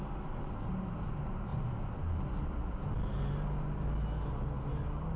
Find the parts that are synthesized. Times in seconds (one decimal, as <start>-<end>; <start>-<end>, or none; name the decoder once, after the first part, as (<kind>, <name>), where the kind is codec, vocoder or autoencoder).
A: none

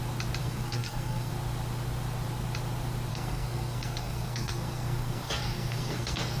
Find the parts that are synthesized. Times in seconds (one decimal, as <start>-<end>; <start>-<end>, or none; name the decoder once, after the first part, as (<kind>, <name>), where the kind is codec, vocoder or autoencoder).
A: 0.4-1.3 (codec, SNAC); 3.1-6.4

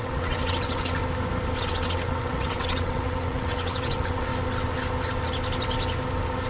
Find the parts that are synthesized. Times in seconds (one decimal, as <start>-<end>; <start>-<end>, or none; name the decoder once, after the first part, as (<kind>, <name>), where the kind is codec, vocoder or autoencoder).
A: 0.0-1.0 (vocoder, WaveNeXt); 1.6-4.3

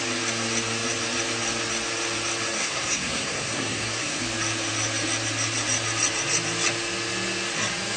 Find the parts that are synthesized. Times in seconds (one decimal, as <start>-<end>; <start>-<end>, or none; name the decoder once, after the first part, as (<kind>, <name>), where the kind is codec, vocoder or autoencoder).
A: 2.6-4.2 (codec, SNAC)